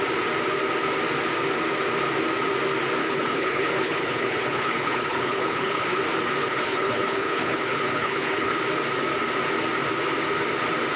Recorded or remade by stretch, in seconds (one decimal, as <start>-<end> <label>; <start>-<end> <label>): 0.0-3.0 recorded; 3.0-6.0 remade; 6.0-6.4 recorded; 6.4-8.6 remade; 8.6-11.0 recorded